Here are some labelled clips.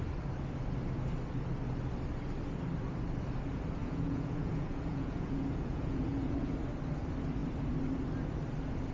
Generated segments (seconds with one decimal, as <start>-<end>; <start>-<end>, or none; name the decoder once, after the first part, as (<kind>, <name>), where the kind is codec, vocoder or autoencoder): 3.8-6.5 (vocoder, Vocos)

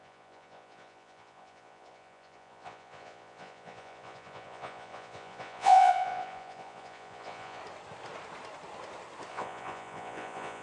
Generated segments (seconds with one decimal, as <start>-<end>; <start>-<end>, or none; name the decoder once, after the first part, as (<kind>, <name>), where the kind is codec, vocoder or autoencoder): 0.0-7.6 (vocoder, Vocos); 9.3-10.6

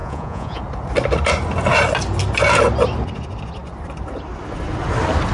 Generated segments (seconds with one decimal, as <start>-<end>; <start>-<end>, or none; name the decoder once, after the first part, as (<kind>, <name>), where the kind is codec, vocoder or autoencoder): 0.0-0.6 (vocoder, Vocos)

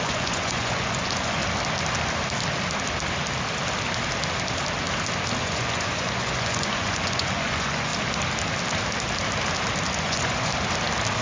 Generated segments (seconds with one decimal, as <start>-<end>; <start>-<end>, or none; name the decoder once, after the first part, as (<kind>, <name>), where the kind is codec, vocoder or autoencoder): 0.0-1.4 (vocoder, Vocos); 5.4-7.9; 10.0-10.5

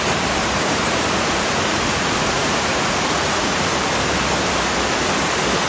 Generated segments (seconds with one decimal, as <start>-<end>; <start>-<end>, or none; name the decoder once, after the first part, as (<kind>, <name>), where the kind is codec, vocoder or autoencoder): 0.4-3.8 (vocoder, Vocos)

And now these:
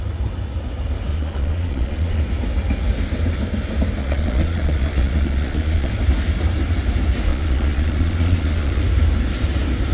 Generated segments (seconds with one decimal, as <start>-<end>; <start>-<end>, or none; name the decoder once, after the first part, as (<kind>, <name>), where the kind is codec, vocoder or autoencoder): 1.1-2.2 (vocoder, Vocos); 4.0-5.9; 7.3-8.8